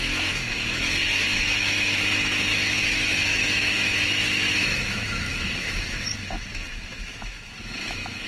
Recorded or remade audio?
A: remade